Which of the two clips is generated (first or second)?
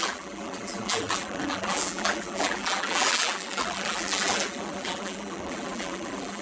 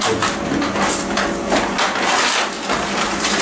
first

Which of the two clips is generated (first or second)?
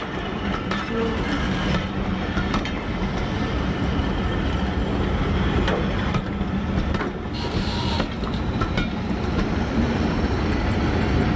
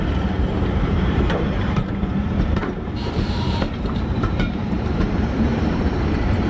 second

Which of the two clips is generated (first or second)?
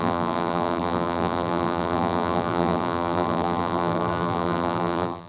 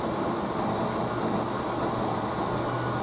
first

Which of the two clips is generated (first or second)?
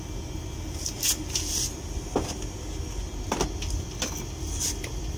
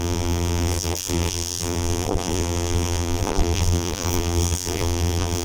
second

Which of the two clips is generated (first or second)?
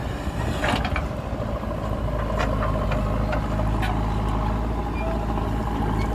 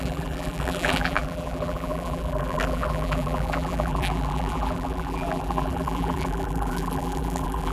second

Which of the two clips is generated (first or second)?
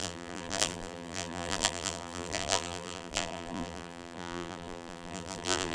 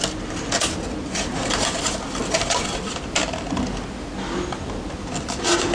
first